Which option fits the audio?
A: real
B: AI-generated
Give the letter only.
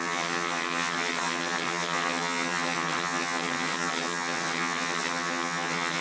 B